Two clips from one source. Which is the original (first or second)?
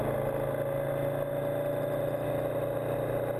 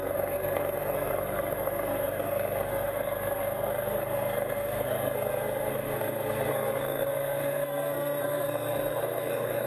first